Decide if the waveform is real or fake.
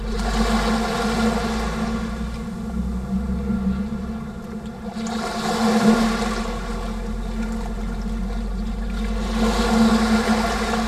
real